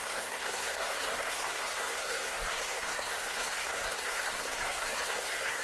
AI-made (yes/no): yes